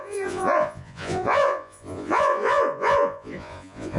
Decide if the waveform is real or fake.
fake